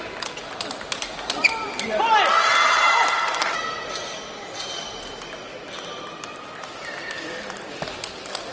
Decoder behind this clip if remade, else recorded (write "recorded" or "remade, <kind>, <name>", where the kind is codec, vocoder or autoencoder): recorded